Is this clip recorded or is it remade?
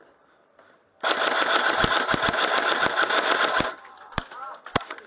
recorded